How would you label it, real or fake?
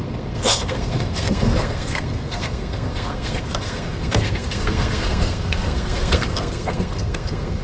fake